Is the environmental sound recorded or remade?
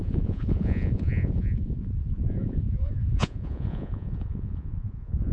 remade